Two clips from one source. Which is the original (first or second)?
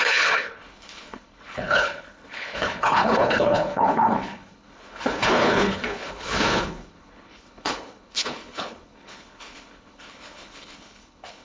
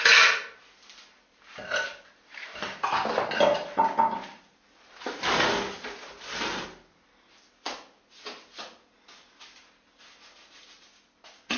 second